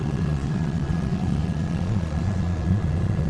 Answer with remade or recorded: remade